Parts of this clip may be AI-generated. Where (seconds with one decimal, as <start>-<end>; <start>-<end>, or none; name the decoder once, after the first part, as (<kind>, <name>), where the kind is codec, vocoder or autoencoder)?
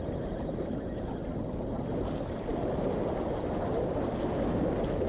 none